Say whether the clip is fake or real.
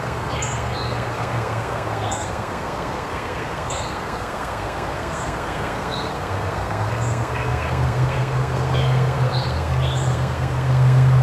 fake